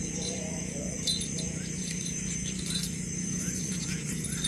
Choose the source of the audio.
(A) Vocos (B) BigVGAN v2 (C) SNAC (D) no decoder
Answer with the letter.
A